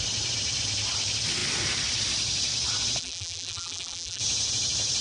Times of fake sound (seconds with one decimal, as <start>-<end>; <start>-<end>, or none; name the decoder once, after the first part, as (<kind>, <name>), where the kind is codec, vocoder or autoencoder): 3.0-4.2 (vocoder, BigVGAN v2)